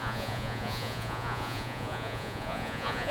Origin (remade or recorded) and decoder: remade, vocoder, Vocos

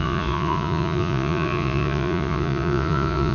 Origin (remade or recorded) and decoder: remade, vocoder, Vocos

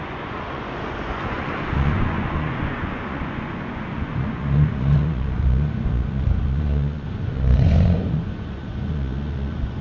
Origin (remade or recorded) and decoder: remade, vocoder, Vocos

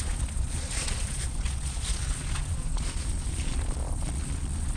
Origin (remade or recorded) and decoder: remade, vocoder, Vocos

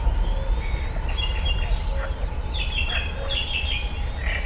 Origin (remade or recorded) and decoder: recorded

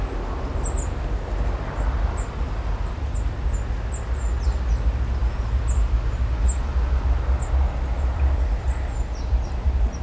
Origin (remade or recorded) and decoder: recorded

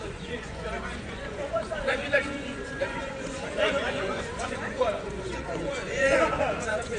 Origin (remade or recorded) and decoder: remade, vocoder, Vocos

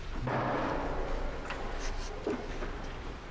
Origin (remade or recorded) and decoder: recorded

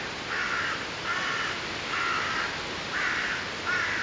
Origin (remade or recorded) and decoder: recorded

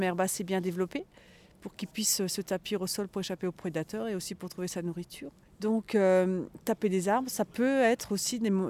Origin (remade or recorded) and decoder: recorded